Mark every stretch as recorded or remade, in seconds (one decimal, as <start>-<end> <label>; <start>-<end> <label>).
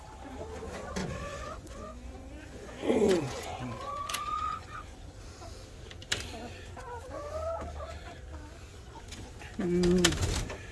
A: 0.0-1.0 recorded; 1.0-5.2 remade; 5.2-8.7 recorded; 8.7-9.3 remade; 9.3-10.7 recorded